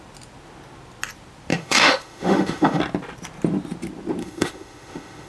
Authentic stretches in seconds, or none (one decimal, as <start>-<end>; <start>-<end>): 0.0-1.5; 2.8-4.2